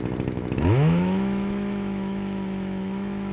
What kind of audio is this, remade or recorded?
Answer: remade